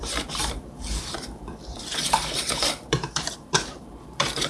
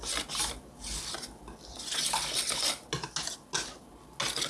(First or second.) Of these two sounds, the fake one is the first